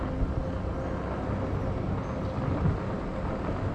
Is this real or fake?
real